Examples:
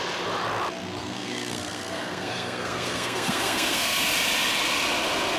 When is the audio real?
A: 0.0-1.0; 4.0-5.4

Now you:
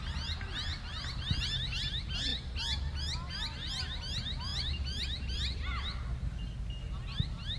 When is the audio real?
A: 0.0-4.5; 6.0-7.6

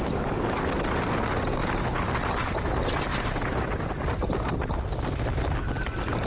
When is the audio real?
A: 0.0-6.3

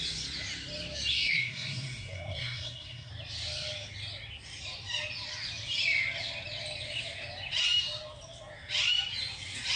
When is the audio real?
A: 0.0-1.1; 3.1-9.8

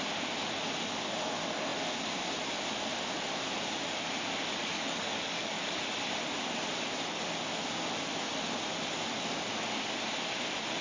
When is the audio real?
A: 0.0-4.6; 5.8-10.8

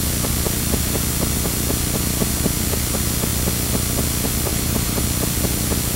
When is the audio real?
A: 0.0-4.5; 5.0-6.0

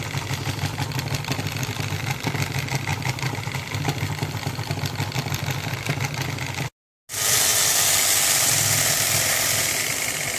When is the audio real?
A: 0.0-10.4

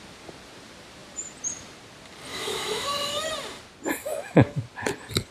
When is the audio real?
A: 0.0-2.3; 3.3-4.0; 4.6-5.3